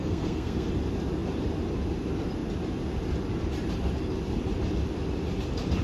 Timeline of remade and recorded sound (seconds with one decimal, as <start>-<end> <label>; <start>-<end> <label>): 0.0-0.7 remade; 0.7-5.8 recorded